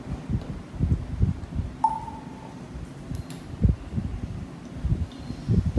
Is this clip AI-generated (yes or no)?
no